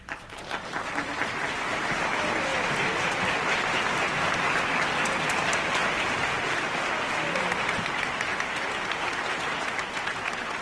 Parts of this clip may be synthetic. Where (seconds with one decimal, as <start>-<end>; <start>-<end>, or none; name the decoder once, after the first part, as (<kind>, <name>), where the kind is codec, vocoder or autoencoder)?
none